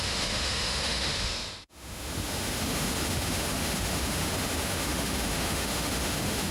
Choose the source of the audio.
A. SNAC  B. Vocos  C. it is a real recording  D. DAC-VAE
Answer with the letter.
D